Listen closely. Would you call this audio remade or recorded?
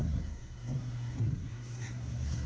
remade